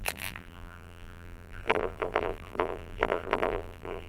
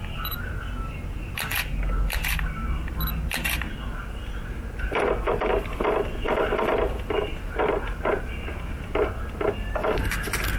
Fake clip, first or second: first